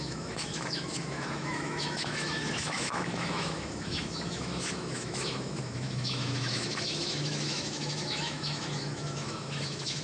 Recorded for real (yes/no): no